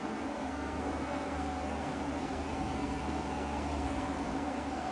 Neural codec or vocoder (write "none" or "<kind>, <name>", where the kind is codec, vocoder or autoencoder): codec, SNAC